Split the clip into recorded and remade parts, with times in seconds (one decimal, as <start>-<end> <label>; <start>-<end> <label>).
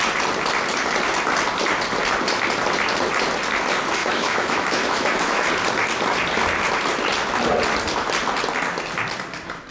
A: 0.0-4.0 recorded; 4.0-5.5 remade; 5.5-9.7 recorded